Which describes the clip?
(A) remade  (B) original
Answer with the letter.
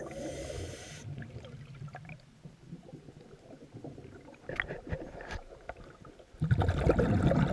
B